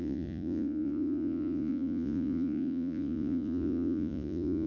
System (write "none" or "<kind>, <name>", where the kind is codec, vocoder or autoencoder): vocoder, Vocos